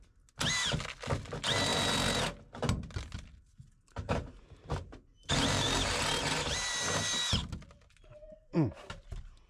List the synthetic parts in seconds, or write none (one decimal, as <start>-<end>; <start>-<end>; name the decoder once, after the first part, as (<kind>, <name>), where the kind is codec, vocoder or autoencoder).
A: none